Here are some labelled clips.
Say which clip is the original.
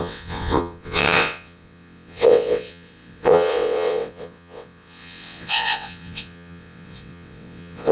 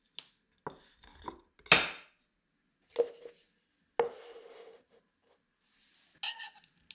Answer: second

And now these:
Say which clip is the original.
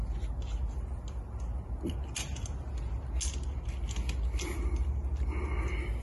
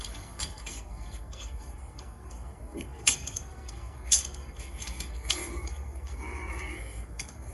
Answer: first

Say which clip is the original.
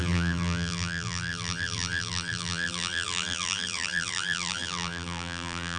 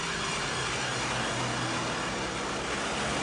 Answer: second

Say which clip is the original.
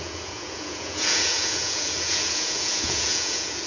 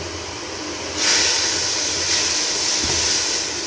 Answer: second